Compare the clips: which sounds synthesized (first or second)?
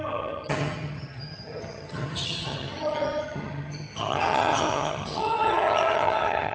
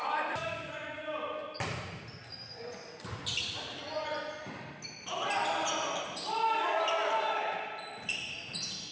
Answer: first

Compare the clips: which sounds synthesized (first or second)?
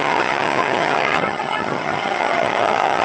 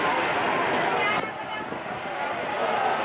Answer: first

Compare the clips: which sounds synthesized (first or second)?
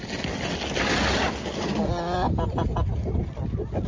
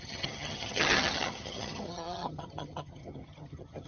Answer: second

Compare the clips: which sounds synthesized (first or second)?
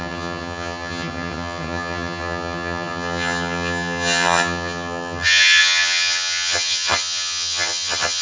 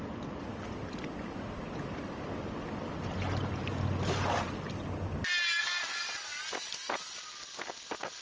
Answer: first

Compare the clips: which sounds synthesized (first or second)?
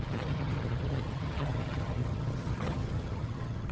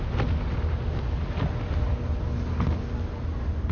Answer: first